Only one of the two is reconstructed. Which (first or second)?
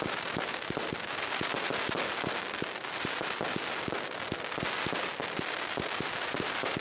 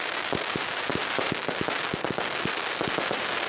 first